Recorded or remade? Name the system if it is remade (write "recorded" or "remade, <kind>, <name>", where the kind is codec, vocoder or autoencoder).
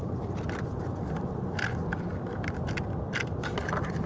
recorded